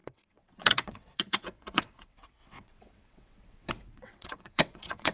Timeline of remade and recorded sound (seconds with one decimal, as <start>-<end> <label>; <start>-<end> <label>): 0.0-5.1 remade